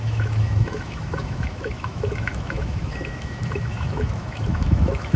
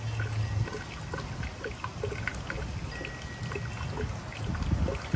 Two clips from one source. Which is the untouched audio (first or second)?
second